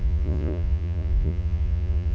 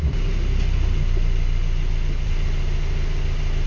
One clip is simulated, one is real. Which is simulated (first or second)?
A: first